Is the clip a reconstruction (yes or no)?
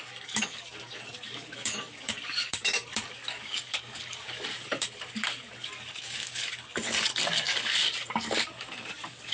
yes